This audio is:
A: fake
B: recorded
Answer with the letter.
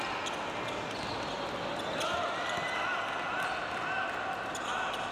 B